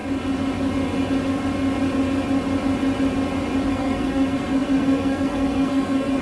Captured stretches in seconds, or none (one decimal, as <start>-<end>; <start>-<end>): 0.0-3.7